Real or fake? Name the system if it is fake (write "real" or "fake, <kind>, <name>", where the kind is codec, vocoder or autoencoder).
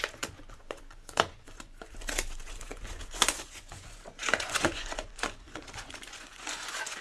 fake, vocoder, Vocos